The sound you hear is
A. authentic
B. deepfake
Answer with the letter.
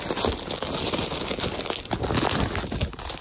A